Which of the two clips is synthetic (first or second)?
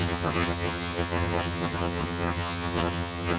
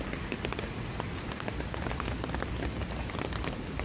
first